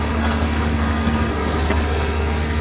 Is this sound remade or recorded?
remade